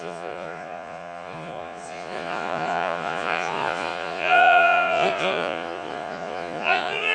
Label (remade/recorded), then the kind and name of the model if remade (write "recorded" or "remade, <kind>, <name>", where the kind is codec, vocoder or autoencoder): remade, vocoder, Vocos